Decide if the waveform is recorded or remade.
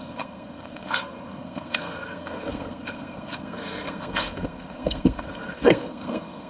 remade